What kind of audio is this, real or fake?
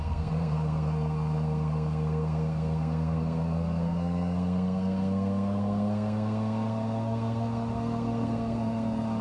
fake